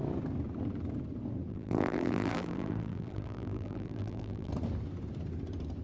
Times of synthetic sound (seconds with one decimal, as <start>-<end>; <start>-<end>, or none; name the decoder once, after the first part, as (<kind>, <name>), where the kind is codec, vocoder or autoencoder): 1.5-4.5 (vocoder, BigVGAN v2)